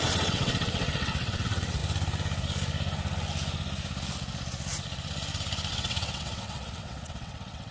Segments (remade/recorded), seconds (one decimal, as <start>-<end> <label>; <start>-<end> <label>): 0.0-1.8 remade; 1.8-5.7 recorded; 5.7-7.7 remade